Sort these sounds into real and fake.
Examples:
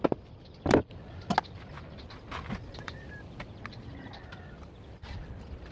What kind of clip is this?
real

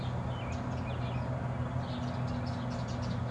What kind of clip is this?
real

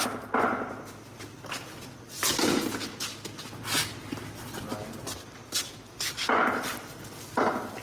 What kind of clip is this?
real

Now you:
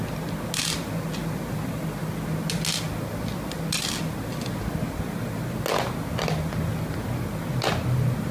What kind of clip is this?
real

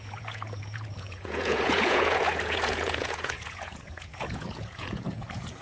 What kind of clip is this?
fake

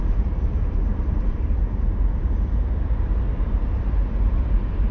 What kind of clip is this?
fake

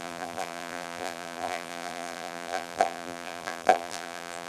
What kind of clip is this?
fake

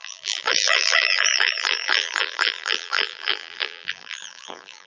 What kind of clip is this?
fake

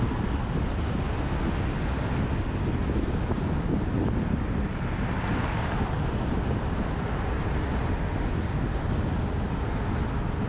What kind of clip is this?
real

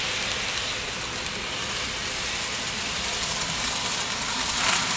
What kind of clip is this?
real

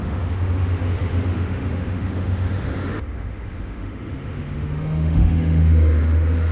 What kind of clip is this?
fake